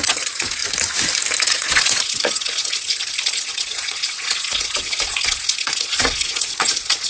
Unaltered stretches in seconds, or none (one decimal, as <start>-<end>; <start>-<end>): 0.6-1.4